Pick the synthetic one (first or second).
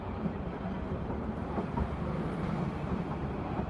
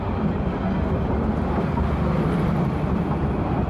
first